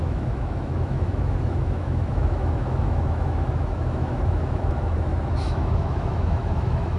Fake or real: fake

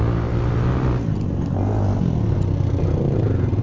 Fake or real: real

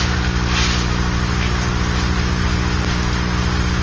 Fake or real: real